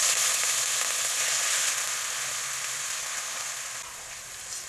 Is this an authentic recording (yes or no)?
yes